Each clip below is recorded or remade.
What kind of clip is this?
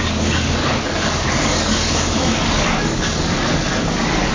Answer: remade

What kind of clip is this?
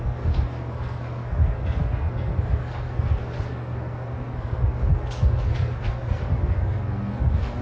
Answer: remade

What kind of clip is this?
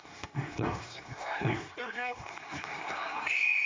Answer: remade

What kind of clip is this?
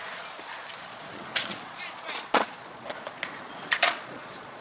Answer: remade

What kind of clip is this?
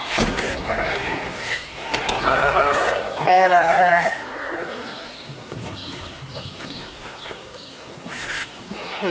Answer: remade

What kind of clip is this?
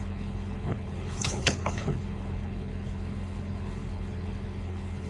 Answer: remade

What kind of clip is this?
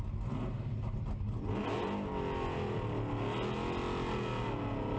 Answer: recorded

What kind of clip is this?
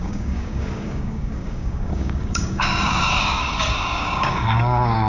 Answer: remade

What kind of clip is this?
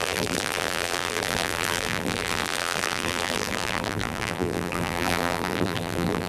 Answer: remade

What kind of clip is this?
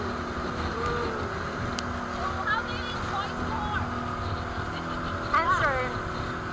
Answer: recorded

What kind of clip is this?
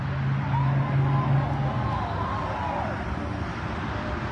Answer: recorded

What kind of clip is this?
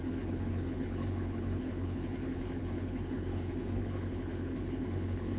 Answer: remade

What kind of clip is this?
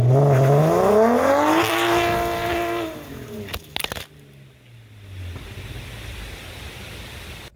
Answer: recorded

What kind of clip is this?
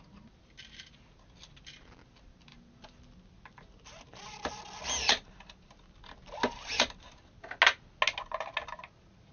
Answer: recorded